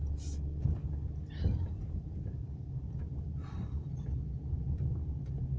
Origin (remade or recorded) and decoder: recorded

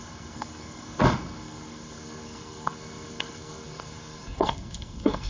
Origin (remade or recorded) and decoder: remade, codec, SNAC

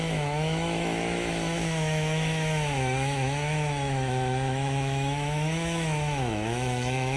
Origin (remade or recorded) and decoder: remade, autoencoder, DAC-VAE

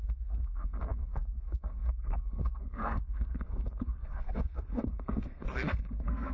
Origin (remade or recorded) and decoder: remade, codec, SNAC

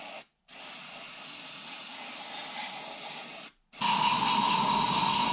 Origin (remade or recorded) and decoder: recorded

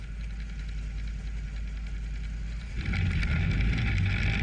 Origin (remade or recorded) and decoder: recorded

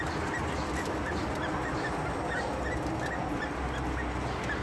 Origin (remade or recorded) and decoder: recorded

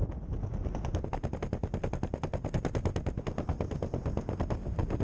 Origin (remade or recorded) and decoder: recorded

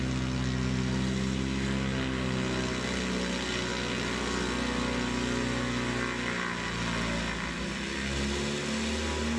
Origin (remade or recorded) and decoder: recorded